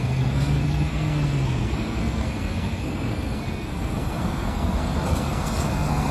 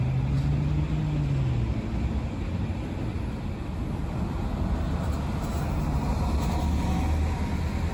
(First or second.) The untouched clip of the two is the second